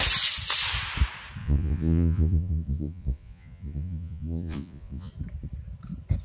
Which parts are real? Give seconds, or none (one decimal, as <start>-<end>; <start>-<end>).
0.0-1.4; 5.1-6.2